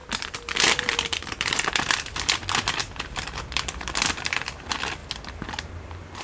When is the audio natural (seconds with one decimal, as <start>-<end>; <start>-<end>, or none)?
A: 5.0-5.7